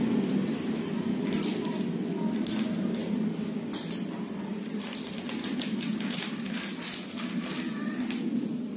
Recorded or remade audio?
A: recorded